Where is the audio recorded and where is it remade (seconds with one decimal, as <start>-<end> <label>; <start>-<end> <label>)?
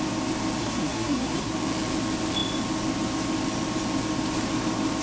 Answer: 0.0-0.6 recorded; 0.6-1.5 remade; 1.5-5.0 recorded